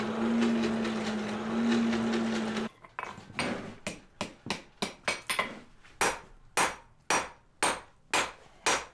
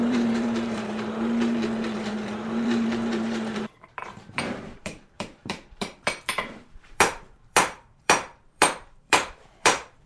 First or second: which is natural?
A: first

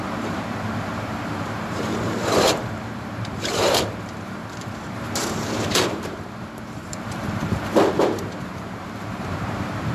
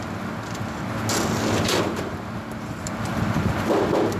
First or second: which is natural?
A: second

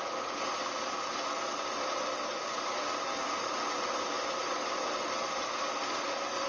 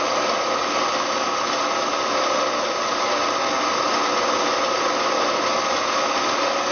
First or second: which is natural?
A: second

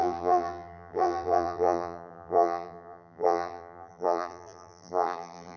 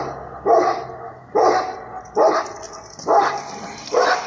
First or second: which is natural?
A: second